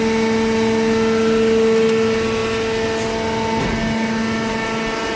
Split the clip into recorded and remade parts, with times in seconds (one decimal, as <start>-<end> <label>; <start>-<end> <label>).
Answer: 0.0-5.2 recorded